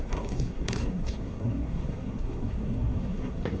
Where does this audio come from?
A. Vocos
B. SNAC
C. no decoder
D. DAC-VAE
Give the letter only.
B